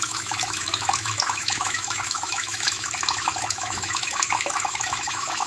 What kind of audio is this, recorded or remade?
remade